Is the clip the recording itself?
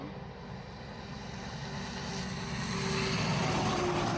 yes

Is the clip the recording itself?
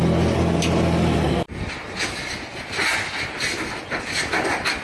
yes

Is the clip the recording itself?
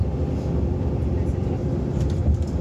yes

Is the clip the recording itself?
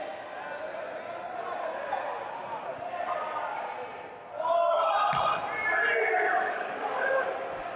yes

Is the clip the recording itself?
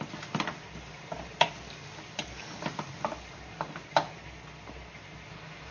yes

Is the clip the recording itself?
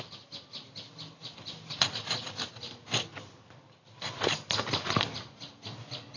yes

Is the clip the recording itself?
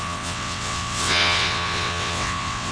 no